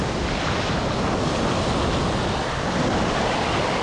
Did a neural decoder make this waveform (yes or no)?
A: no